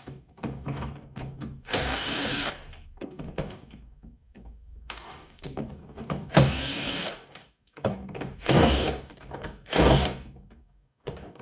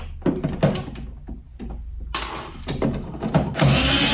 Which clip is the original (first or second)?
second